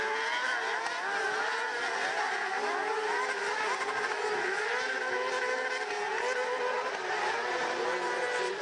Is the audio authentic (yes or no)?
yes